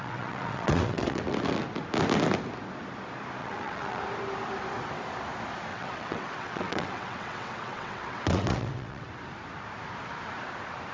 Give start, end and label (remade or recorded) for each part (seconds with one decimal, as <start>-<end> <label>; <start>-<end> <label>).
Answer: 0.0-1.2 remade; 1.2-3.4 recorded; 3.4-4.0 remade; 4.0-5.7 recorded; 5.7-9.1 remade; 9.1-10.9 recorded